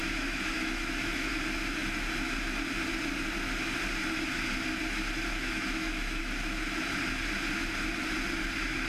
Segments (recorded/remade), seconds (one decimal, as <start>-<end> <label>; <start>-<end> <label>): 0.0-1.3 remade; 1.3-5.3 recorded; 5.3-6.2 remade; 6.2-8.9 recorded